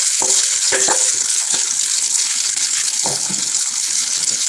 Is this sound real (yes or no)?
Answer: no